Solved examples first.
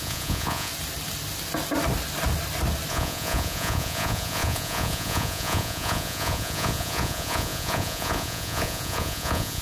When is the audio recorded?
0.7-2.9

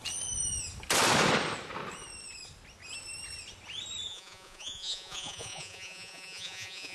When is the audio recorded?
0.0-4.1

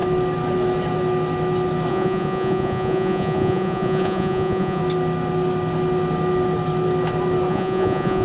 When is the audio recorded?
0.0-1.9; 4.8-7.5

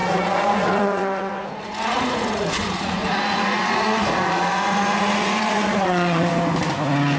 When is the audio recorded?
6.3-7.2

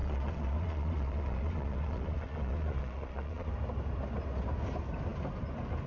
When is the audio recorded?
3.5-5.9

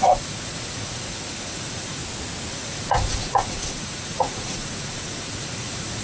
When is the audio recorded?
2.0-2.5

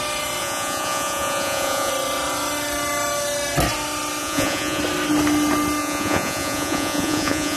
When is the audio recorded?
0.0-0.4; 1.9-4.2; 4.8-5.8

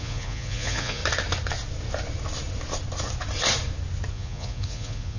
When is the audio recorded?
1.0-4.1